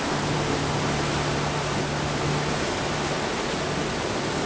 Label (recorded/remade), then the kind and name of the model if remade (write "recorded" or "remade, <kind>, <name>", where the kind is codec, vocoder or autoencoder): recorded